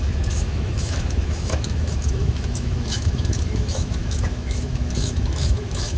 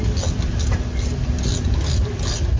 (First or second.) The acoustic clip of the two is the second